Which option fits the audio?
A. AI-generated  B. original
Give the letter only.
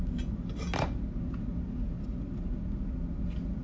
B